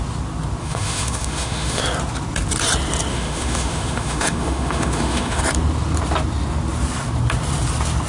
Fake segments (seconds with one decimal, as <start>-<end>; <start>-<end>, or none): 0.6-1.8; 3.1-5.4